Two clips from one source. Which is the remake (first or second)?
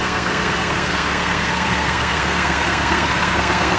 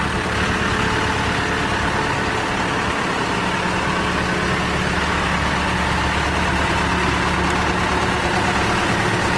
first